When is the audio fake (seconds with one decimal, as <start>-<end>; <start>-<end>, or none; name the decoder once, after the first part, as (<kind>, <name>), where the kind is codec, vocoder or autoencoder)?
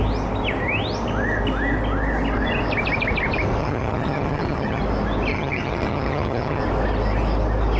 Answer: 3.6-4.8 (vocoder, HiFi-GAN); 5.3-6.6